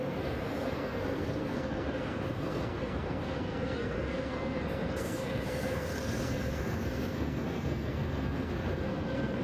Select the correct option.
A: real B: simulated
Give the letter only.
B